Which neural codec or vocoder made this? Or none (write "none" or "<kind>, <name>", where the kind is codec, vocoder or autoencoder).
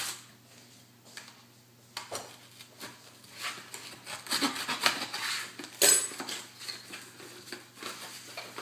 none